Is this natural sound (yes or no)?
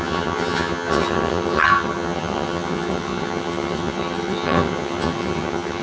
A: no